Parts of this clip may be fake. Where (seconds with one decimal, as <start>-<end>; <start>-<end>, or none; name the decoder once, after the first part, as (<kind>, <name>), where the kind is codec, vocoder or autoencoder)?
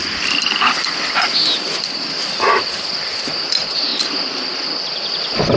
none